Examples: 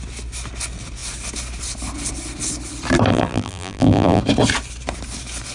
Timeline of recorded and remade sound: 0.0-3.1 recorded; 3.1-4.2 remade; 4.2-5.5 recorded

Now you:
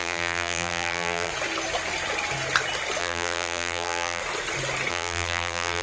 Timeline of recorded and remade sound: 0.0-1.3 remade; 1.3-3.0 recorded; 3.0-4.2 remade; 4.2-4.9 recorded; 4.9-5.8 remade

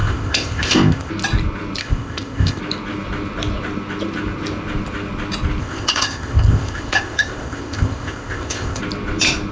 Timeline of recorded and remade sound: 0.0-1.1 remade; 1.1-1.8 recorded; 1.8-2.6 remade; 2.6-5.6 recorded; 5.6-8.8 remade; 8.8-9.5 recorded